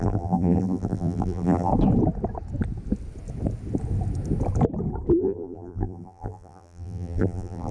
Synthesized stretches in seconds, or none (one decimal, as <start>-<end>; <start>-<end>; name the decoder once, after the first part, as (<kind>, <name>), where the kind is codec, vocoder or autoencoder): 0.0-1.7 (vocoder, BigVGAN v2); 5.2-7.7